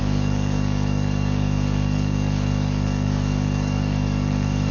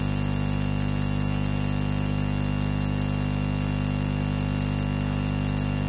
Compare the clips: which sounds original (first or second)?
second